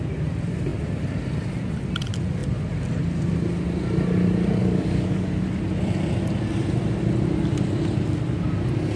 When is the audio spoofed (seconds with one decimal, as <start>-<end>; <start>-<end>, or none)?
4.6-5.3